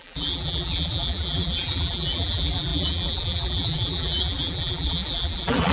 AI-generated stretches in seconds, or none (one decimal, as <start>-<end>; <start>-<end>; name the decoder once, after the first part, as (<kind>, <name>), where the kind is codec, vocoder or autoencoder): 0.0-5.7 (vocoder, BigVGAN v2)